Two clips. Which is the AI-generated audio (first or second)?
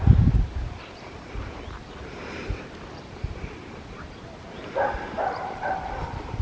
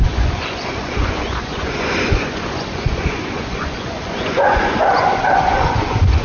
second